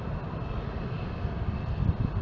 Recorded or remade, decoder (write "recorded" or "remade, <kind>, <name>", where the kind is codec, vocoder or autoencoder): recorded